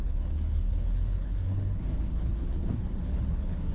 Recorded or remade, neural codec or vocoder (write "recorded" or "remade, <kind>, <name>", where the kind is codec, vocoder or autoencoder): remade, codec, HILCodec